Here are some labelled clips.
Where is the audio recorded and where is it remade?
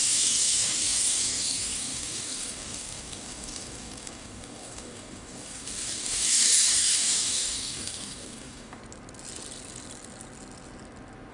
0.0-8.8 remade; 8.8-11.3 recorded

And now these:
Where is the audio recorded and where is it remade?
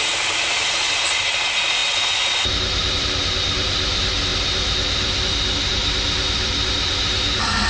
0.0-7.7 recorded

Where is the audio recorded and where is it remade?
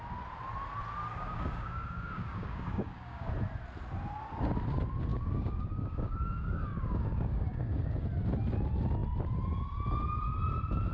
0.0-1.1 recorded; 1.1-3.3 remade; 3.3-5.1 recorded; 5.1-8.0 remade; 8.0-10.9 recorded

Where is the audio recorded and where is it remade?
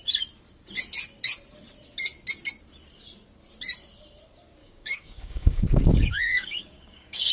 0.0-4.6 recorded; 4.6-7.3 remade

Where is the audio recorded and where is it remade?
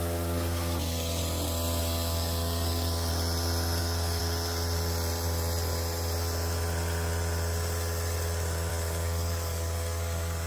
0.0-1.2 remade; 1.2-1.8 recorded; 1.8-3.1 remade; 3.1-3.8 recorded; 3.8-4.2 remade; 4.2-8.7 recorded; 8.7-10.5 remade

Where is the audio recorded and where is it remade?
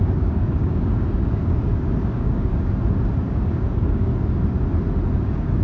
0.0-2.5 remade; 2.5-3.3 recorded; 3.3-4.1 remade; 4.1-5.1 recorded; 5.1-5.6 remade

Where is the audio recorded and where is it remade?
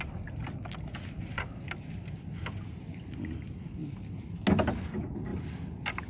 0.0-6.1 recorded